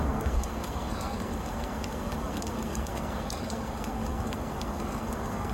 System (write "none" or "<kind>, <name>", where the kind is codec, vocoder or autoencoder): codec, SNAC